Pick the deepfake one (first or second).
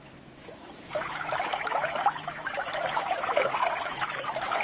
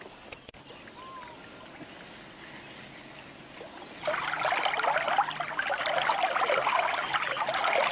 first